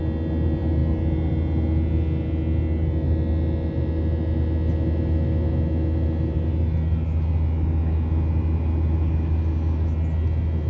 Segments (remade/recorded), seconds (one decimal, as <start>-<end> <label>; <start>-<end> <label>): 0.0-10.7 recorded